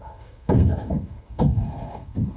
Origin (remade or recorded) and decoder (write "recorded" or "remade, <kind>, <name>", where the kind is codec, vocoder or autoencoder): remade, codec, SNAC